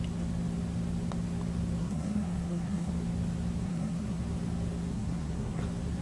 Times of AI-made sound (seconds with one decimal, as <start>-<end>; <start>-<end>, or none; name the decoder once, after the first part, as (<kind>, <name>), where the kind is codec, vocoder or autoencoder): 1.8-2.9 (codec, SNAC); 3.6-4.2; 4.9-5.6